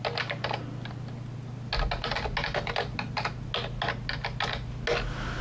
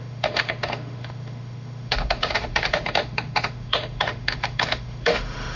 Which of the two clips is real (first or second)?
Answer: first